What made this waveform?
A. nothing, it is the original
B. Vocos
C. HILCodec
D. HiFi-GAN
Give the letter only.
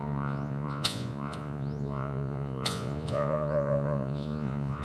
B